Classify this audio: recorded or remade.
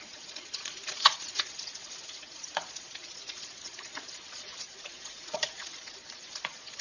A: remade